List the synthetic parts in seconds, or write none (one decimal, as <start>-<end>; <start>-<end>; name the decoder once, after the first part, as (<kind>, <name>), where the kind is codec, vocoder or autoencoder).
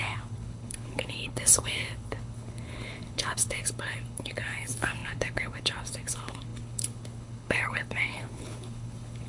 0.0-9.3 (codec, HILCodec)